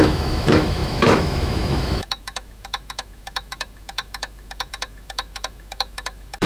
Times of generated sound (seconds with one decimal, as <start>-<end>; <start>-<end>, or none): 0.0-6.5